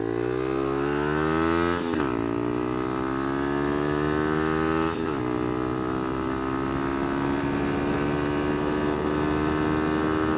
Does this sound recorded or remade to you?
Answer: recorded